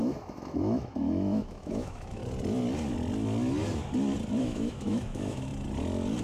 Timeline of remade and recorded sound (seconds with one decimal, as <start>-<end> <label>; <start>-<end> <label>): 0.0-2.2 remade; 2.2-4.4 recorded; 4.4-5.5 remade; 5.5-6.2 recorded